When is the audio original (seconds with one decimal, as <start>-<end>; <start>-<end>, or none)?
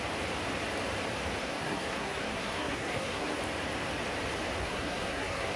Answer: 0.0-1.4; 3.4-4.6